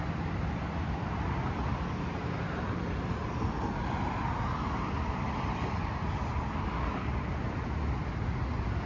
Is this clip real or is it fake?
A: real